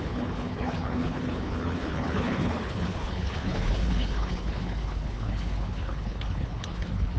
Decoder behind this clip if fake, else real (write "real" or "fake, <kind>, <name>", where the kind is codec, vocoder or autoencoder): fake, codec, HILCodec